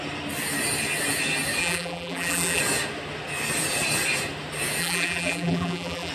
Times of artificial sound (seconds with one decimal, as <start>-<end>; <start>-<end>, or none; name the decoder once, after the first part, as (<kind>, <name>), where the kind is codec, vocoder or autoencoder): 1.6-2.6 (vocoder, BigVGAN v2); 4.8-6.1